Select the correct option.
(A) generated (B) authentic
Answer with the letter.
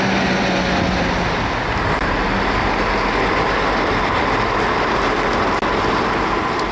B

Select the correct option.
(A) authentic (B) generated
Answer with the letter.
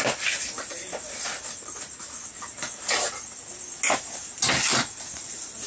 A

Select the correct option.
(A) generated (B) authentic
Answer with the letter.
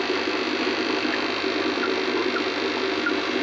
B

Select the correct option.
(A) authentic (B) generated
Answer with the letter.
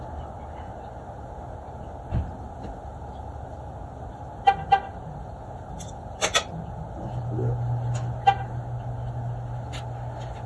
A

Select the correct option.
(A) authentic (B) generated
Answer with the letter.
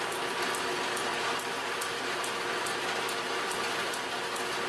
A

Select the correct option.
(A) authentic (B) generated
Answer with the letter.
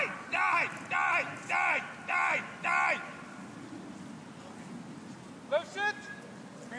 A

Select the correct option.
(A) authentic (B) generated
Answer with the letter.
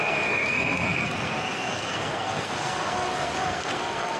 B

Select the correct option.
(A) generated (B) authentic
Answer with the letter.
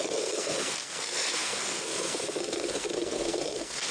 A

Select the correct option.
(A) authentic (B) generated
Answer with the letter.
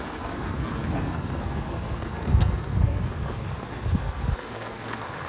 B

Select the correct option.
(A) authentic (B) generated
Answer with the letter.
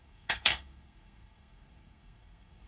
B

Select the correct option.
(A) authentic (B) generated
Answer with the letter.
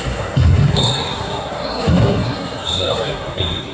B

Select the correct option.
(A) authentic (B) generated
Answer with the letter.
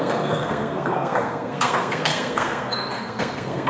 B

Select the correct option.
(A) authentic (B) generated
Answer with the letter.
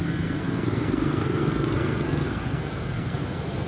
B